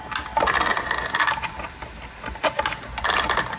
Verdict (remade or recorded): recorded